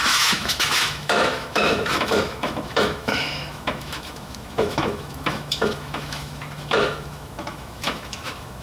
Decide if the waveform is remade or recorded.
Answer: remade